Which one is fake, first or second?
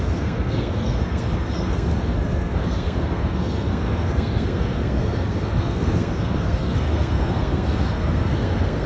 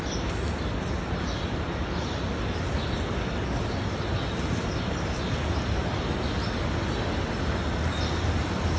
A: first